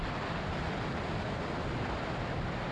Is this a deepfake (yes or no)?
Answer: no